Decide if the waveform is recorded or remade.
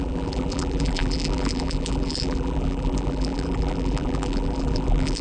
remade